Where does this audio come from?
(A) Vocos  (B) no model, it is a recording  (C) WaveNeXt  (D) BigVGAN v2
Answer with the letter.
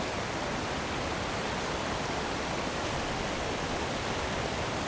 B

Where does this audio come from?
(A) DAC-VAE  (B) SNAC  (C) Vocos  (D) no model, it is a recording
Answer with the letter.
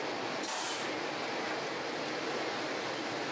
D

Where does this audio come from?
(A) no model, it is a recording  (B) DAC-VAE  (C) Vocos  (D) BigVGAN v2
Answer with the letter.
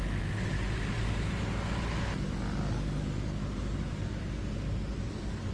A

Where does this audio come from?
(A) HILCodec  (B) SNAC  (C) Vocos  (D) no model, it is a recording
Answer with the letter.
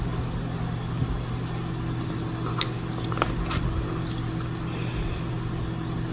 D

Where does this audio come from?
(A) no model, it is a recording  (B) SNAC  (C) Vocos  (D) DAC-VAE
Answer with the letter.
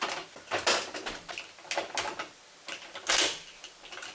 A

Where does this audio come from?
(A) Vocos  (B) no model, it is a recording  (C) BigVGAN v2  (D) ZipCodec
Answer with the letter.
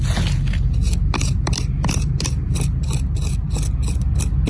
B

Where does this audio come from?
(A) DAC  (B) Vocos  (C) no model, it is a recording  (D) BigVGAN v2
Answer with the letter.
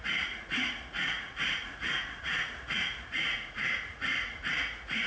B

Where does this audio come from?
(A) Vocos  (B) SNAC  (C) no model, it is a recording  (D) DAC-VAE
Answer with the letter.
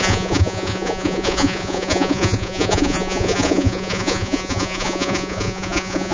A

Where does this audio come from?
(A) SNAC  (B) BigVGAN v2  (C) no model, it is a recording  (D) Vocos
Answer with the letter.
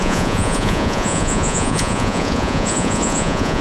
D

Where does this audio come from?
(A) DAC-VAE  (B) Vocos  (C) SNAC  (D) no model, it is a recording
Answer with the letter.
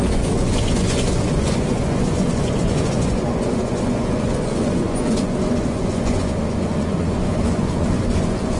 B